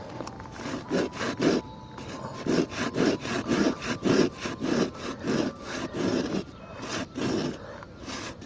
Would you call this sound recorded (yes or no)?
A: yes